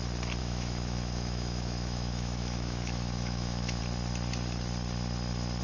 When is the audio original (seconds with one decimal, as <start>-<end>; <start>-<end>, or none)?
0.0-0.4; 3.8-5.6